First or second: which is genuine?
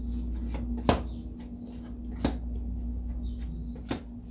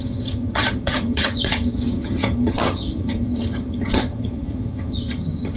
first